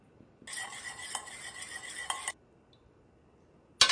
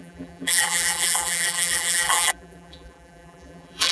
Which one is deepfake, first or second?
second